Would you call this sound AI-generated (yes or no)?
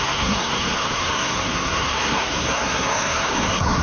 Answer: yes